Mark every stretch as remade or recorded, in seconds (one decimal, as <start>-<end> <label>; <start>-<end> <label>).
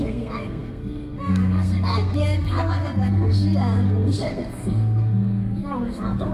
0.0-6.3 remade